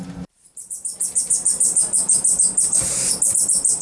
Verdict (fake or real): fake